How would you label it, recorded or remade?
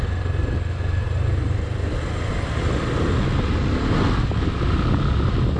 recorded